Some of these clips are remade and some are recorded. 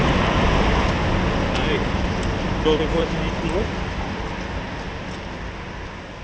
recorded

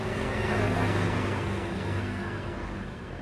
remade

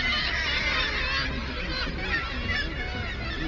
recorded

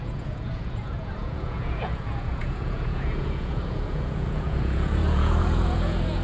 remade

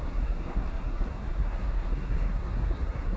remade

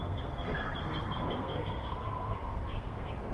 remade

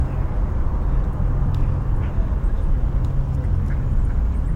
recorded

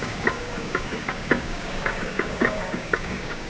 remade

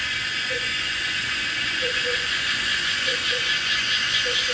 remade